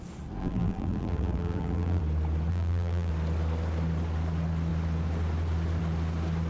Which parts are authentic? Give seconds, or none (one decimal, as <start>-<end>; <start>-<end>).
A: 0.0-0.4; 2.0-2.5; 3.1-6.5